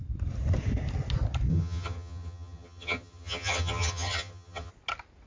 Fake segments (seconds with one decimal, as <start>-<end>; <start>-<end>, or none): 1.5-4.7